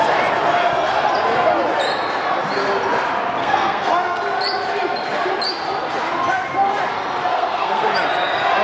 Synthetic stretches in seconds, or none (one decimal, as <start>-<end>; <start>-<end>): 3.4-3.9; 7.3-7.9